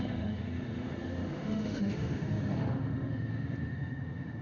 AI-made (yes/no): yes